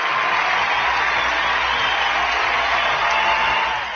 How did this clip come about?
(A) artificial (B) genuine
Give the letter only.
B